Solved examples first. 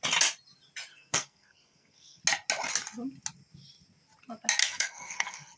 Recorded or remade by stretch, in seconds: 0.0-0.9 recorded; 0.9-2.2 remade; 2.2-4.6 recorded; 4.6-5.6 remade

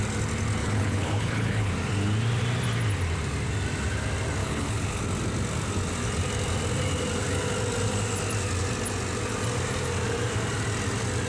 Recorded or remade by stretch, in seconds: 0.0-0.6 recorded; 0.6-1.7 remade; 1.7-4.4 recorded; 4.4-5.0 remade; 5.0-11.3 recorded